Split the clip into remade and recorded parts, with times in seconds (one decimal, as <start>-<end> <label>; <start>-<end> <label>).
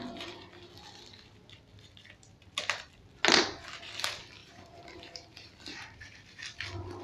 0.0-4.4 recorded; 4.4-5.5 remade; 5.5-7.0 recorded